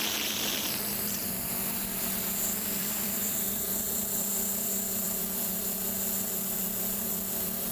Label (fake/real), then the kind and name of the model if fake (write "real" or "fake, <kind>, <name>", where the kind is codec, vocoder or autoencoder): fake, vocoder, BigVGAN v2